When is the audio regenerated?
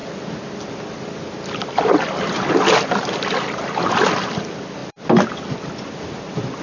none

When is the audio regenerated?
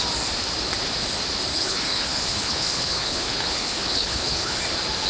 1.5-4.6 (codec, HILCodec)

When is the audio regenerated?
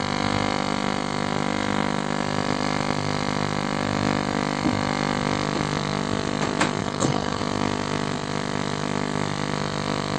6.8-7.4 (codec, HILCodec)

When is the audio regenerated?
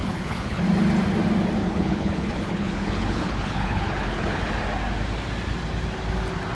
0.0-0.6 (codec, HILCodec); 1.6-4.5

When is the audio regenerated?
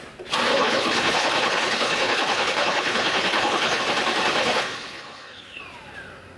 0.5-3.8 (codec, HILCodec); 4.4-5.6